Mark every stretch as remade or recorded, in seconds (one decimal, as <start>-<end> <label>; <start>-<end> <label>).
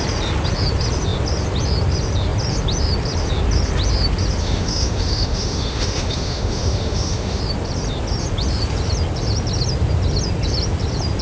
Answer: 0.0-4.4 recorded; 4.4-7.4 remade; 7.4-11.2 recorded